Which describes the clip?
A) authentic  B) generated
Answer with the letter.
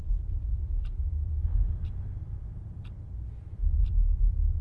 B